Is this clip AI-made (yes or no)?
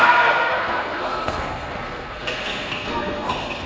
yes